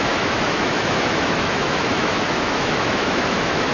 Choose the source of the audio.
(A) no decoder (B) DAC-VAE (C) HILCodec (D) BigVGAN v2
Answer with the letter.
B